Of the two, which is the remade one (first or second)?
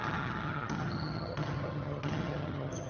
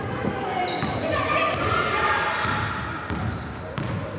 first